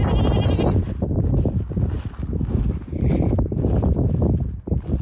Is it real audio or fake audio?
real